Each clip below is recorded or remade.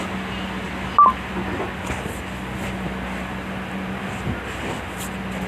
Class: recorded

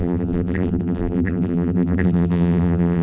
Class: remade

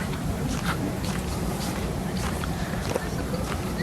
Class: remade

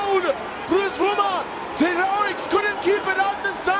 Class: remade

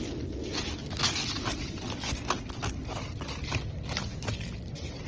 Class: recorded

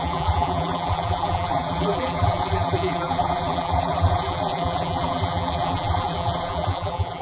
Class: remade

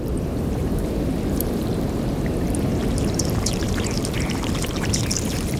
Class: remade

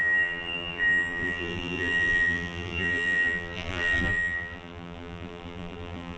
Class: remade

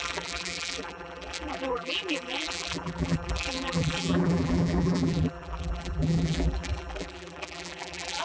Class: remade